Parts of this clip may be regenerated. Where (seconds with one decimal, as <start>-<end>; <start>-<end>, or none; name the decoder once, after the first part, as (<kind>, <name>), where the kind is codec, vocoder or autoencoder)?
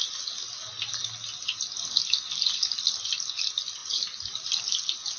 none